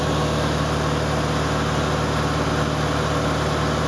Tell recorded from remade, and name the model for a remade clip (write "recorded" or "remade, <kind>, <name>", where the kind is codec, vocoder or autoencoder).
recorded